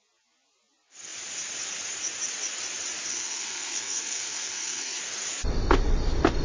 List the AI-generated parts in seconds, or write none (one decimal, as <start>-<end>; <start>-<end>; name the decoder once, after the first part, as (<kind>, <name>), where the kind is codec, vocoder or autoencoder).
3.1-5.0 (codec, SNAC)